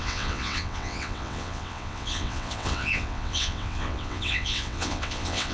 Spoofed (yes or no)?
yes